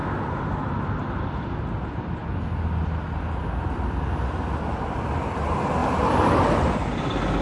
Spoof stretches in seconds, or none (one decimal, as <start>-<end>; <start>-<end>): none